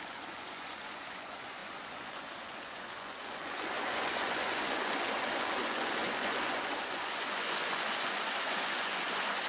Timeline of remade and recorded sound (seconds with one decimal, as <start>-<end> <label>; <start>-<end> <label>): 0.0-9.5 remade